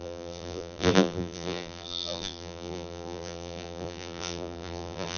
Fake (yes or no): yes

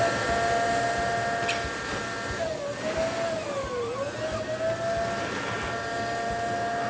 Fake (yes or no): no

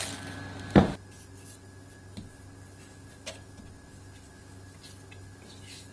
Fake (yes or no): no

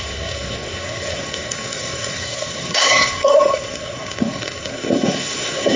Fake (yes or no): yes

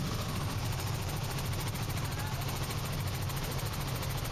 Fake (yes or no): yes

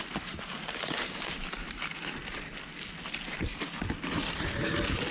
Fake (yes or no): no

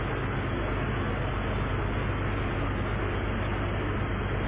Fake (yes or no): no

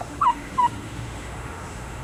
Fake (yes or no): yes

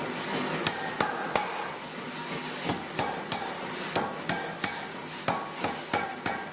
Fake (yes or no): no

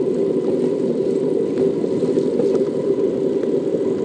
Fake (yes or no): no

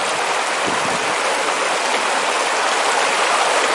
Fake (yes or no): no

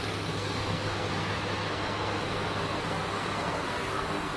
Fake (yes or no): yes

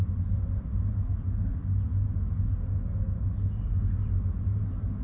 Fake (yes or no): no